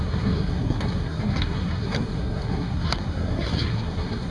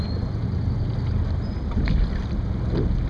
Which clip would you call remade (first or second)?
first